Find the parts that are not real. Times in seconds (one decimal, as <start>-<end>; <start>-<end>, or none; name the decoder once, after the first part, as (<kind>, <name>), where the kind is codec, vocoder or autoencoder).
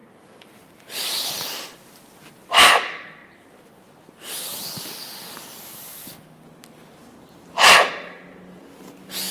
0.0-1.9 (vocoder, BigVGAN v2)